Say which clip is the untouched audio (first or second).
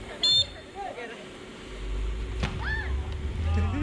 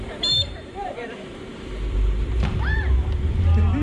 first